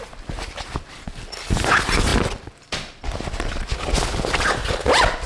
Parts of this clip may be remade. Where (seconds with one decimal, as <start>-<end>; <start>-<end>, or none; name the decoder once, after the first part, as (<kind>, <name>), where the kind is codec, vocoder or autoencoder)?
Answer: none